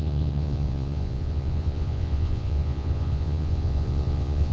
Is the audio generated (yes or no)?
yes